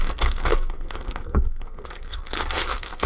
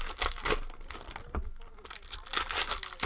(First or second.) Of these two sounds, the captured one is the second